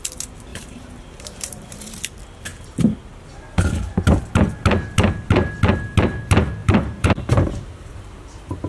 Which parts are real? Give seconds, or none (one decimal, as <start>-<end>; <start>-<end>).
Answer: 0.0-0.5; 2.0-6.6